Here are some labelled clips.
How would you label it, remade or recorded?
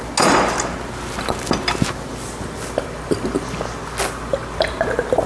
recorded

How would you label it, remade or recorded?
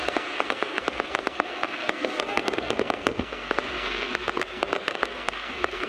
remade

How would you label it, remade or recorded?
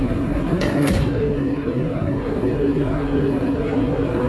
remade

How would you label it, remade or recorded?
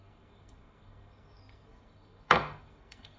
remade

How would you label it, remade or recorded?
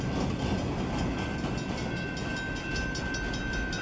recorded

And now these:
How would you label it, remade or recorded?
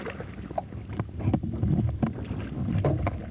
recorded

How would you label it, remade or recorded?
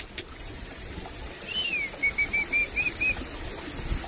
recorded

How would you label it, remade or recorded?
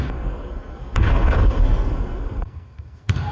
remade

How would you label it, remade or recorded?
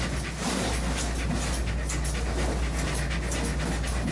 recorded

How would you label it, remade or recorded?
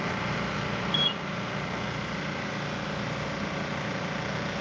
recorded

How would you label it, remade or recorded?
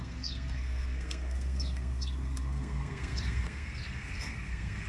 remade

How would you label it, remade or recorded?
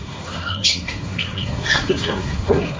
remade